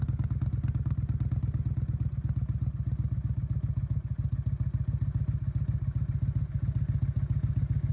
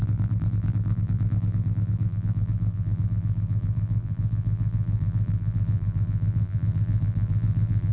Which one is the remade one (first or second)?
second